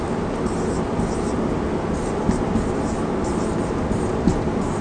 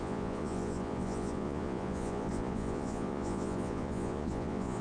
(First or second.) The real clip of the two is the first